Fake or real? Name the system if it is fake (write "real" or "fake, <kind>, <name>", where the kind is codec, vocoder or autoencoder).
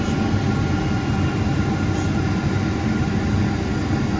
real